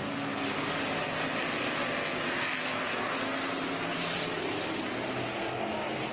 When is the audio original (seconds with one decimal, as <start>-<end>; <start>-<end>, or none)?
0.0-6.1